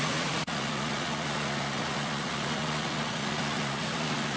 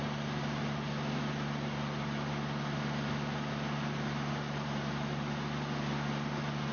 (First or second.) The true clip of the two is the second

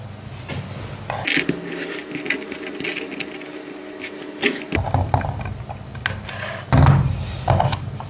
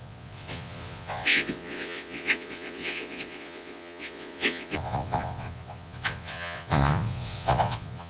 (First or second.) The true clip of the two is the first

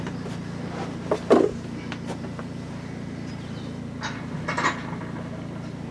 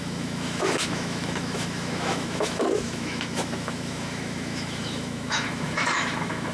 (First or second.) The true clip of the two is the first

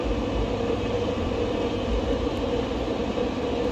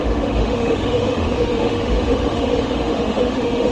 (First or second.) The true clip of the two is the first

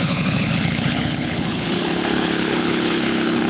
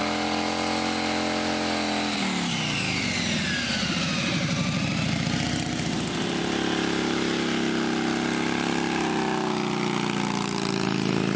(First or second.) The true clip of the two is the second